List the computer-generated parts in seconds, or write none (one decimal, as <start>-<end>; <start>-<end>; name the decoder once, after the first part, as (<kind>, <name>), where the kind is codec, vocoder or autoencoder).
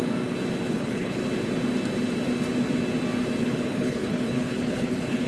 0.7-1.2 (codec, HILCodec); 3.4-5.3